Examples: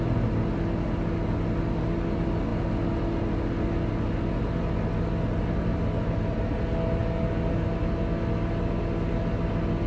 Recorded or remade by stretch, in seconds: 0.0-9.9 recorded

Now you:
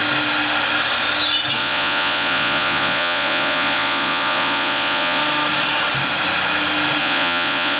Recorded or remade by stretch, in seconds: 0.0-1.6 recorded; 1.6-5.2 remade; 5.2-7.0 recorded; 7.0-7.8 remade

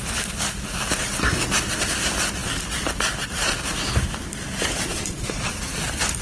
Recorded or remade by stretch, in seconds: 0.0-4.9 recorded; 4.9-5.5 remade; 5.5-6.2 recorded

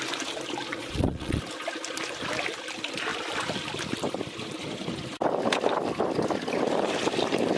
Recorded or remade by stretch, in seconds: 0.0-0.7 recorded; 0.7-1.4 remade; 1.4-7.6 recorded

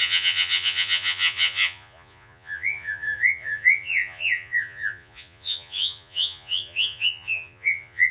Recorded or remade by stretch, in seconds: 0.0-8.1 remade

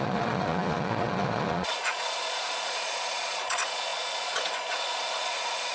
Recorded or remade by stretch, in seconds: 0.0-5.7 remade

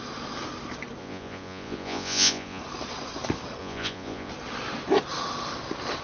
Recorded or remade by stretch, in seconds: 0.0-1.0 recorded; 1.0-2.6 remade; 2.6-3.6 recorded; 3.6-4.3 remade; 4.3-6.0 recorded

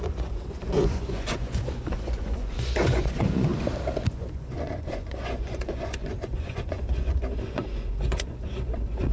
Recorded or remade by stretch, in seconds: 0.0-3.5 remade; 3.5-4.1 recorded; 4.1-9.1 remade